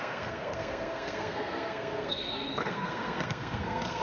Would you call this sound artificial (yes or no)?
yes